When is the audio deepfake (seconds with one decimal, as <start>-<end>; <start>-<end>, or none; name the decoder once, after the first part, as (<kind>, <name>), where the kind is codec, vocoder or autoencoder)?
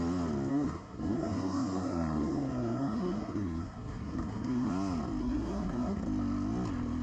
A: 0.5-4.7 (codec, SNAC); 5.2-6.0